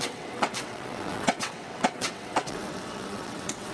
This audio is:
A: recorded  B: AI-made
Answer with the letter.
B